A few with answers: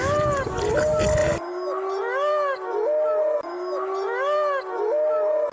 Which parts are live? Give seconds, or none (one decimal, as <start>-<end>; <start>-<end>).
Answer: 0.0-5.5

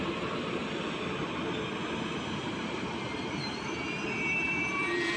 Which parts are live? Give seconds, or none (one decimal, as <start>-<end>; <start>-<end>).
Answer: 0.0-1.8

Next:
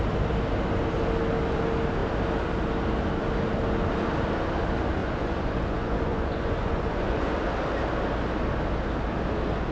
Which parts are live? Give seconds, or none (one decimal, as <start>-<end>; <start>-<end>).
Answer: 0.0-5.0; 7.3-9.7

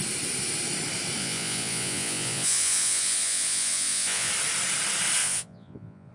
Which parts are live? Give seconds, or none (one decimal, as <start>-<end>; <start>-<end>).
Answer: 0.0-1.2; 4.3-5.2